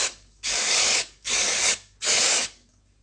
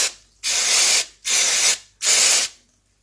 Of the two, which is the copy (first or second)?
first